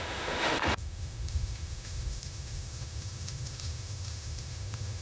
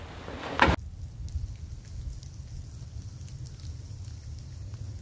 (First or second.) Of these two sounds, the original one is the second